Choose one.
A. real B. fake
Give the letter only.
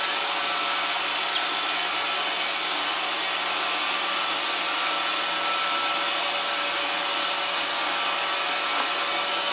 A